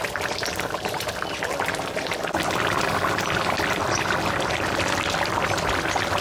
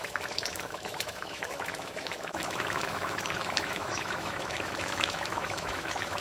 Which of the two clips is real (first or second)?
first